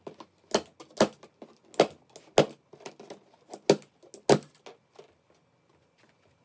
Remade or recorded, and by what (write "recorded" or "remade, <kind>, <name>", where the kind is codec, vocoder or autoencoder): recorded